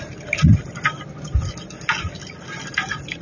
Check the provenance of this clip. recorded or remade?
recorded